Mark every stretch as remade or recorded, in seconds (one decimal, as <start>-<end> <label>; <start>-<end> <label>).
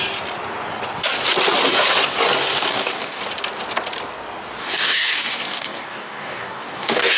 0.0-2.7 recorded; 2.7-3.2 remade; 3.2-4.6 recorded; 4.6-7.2 remade